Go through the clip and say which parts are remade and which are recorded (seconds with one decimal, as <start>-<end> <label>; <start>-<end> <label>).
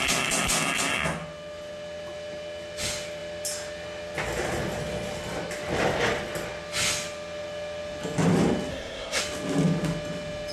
0.0-8.7 recorded; 8.7-9.2 remade; 9.2-10.5 recorded